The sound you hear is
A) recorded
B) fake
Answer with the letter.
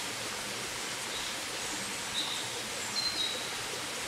A